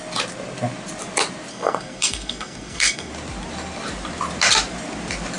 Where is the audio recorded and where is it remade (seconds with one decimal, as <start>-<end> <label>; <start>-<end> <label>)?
0.0-1.5 recorded; 1.5-3.1 remade; 3.1-5.4 recorded